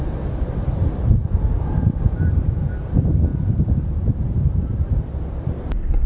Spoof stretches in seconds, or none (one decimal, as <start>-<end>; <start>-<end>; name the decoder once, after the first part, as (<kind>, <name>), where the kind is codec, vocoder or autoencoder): 0.0-3.3 (vocoder, BigVGAN v2); 4.8-6.1